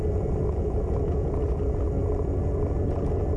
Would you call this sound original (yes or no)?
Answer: yes